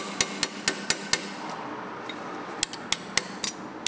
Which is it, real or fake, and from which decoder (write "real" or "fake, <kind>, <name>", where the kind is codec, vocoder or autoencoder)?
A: real